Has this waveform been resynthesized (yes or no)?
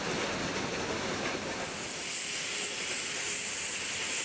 no